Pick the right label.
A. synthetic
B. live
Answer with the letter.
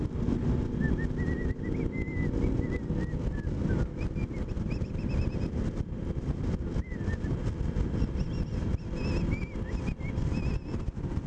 B